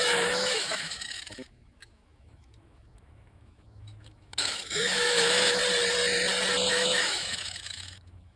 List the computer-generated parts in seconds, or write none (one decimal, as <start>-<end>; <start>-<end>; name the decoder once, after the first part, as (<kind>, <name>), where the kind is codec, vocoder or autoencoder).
0.0-5.6 (autoencoder, DAC-VAE); 6.7-8.4